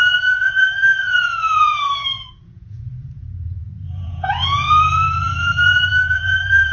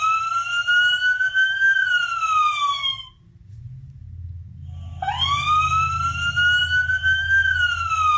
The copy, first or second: first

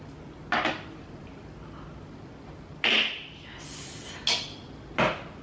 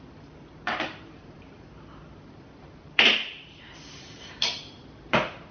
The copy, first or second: second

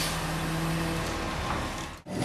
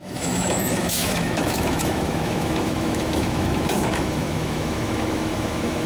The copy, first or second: second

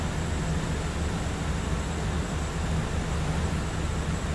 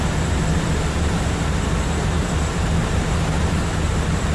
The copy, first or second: second